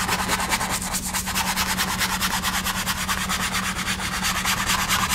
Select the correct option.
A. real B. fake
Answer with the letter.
A